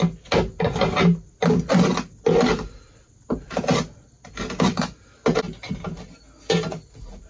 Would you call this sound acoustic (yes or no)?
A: yes